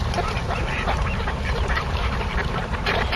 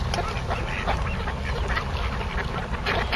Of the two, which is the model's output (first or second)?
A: first